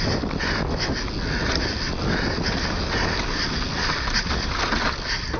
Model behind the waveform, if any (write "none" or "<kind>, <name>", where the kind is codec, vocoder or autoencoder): none